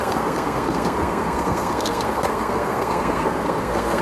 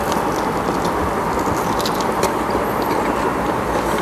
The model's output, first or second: first